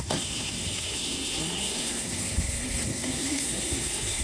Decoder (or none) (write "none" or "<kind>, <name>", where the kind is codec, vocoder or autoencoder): codec, SNAC